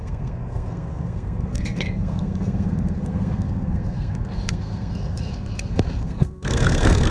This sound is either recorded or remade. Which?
remade